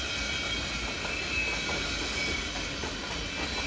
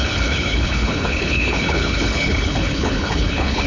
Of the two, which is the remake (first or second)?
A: second